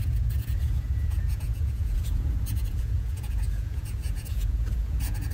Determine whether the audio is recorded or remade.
remade